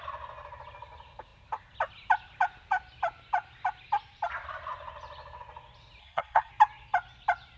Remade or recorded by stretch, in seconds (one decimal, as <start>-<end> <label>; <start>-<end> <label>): 0.0-6.0 recorded; 6.0-6.5 remade; 6.5-7.6 recorded